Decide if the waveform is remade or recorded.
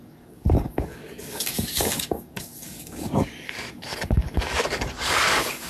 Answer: remade